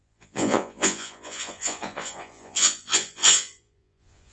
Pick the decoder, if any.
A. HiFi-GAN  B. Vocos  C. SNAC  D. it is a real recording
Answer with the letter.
B